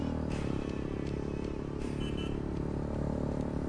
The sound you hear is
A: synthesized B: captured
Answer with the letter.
B